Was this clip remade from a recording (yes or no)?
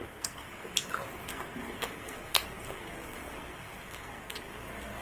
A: yes